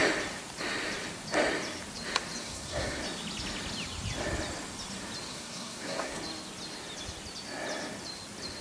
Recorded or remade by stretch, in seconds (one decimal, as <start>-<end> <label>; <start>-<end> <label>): 0.0-2.4 recorded; 2.4-3.0 remade; 3.0-5.3 recorded; 5.3-6.2 remade; 6.2-8.6 recorded